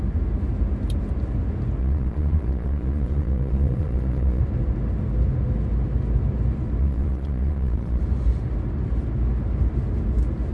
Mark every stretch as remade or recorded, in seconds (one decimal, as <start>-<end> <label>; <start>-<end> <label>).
0.0-1.8 recorded; 1.8-4.4 remade; 4.4-6.8 recorded; 6.8-8.0 remade; 8.0-10.5 recorded